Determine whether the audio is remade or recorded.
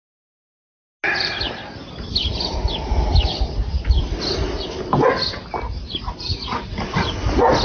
recorded